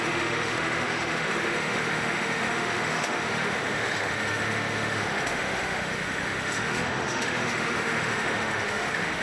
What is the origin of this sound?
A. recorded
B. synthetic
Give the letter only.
B